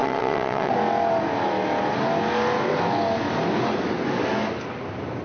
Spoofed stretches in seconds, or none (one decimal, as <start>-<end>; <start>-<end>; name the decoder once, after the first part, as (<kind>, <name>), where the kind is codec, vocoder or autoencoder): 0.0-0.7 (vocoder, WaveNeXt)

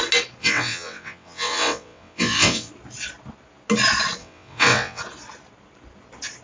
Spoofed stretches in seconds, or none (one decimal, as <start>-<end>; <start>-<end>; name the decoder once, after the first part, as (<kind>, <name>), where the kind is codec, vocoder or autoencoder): 0.4-2.7 (vocoder, WaveNeXt); 4.2-5.0

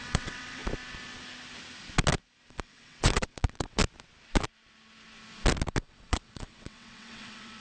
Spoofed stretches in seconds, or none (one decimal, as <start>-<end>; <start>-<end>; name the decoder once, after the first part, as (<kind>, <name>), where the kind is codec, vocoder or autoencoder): 0.0-0.6 (vocoder, WaveNeXt); 2.5-3.8; 5.8-7.6